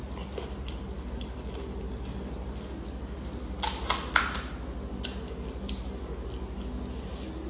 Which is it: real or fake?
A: real